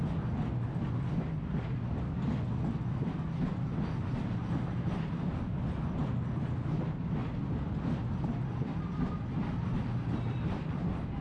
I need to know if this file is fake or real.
real